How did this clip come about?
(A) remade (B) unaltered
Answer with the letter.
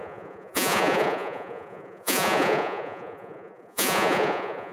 A